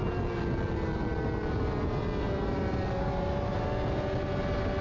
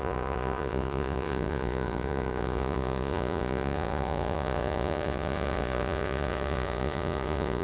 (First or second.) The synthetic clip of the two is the second